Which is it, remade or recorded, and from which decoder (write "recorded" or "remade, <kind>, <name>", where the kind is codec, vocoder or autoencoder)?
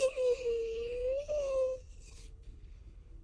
remade, codec, HILCodec